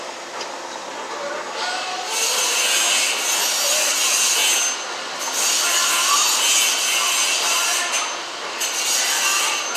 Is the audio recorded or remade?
recorded